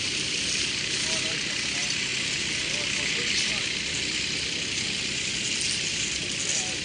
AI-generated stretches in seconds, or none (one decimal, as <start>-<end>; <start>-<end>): none